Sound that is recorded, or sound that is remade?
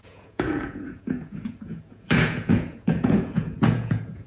remade